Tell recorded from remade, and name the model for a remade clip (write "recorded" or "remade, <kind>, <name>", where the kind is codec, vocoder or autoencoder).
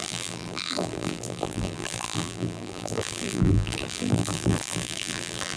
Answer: remade, vocoder, BigVGAN v2